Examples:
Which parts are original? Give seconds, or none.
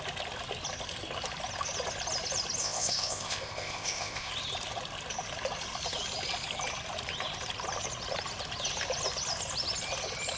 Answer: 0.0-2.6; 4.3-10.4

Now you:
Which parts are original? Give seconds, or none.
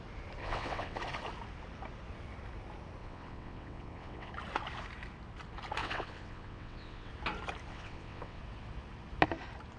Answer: 0.0-0.4; 1.0-3.0; 4.3-5.8; 7.1-7.7; 8.4-9.8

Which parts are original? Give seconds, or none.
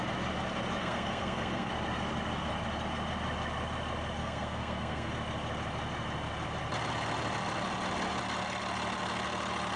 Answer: 0.0-0.8; 1.7-4.2; 5.1-9.8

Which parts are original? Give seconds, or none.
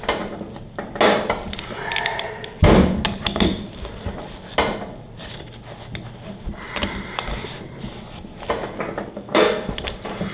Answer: 0.0-9.1; 9.7-10.3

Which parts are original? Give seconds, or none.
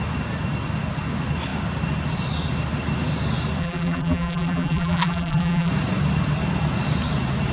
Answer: 0.0-3.6; 5.7-7.5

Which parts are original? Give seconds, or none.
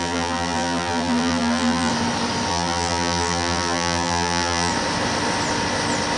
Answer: 1.9-2.5; 4.7-6.2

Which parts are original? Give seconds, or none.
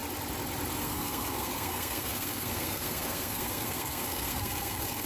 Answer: 0.0-0.8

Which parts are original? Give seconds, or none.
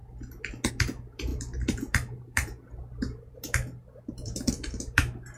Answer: 0.0-0.7